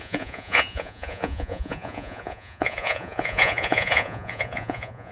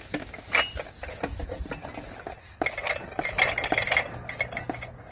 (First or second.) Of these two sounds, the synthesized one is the first